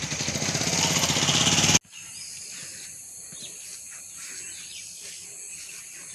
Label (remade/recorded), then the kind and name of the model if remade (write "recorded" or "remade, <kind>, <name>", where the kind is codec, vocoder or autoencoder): recorded